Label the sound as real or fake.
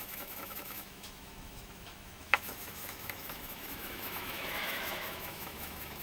fake